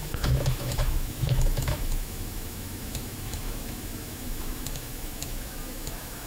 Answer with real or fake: fake